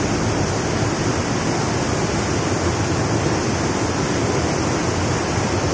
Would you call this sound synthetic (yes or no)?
no